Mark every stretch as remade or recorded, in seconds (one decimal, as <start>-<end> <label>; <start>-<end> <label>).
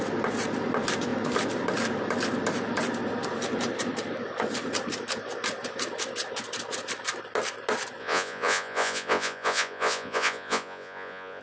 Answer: 0.0-8.0 recorded; 8.0-11.4 remade